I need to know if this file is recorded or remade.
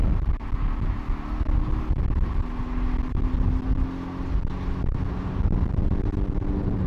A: recorded